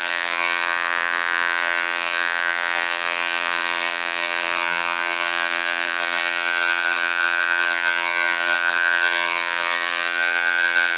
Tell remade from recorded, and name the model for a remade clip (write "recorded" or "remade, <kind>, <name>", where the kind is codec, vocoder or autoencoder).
remade, vocoder, BigVGAN v2